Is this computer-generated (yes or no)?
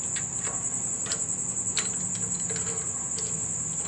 no